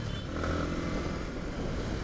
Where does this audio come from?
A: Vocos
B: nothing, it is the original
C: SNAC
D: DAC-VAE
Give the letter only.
B